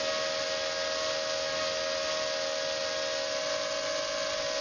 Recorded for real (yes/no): yes